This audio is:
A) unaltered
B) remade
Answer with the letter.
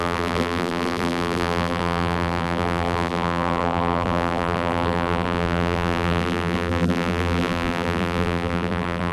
B